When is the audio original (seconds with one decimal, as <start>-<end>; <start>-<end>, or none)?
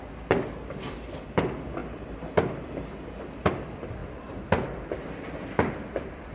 0.0-6.3